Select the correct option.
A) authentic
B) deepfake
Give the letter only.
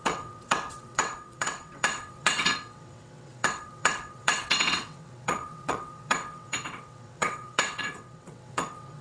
B